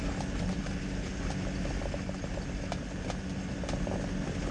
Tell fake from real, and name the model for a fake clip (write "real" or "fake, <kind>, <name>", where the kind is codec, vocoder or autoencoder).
real